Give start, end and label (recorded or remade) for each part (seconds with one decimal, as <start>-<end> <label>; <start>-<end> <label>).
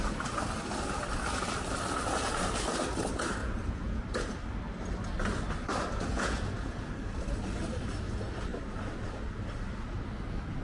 0.0-3.4 recorded; 3.4-4.0 remade; 4.0-6.1 recorded; 6.1-6.9 remade; 6.9-10.6 recorded